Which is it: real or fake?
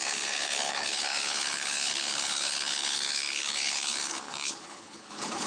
fake